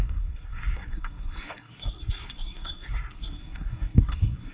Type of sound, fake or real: fake